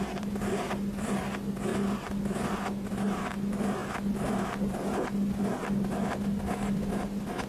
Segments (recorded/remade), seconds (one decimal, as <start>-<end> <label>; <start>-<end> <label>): 0.0-7.5 recorded